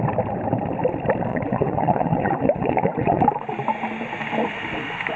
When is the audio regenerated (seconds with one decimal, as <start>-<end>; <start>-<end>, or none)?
1.3-3.2